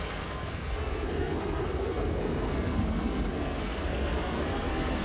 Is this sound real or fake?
fake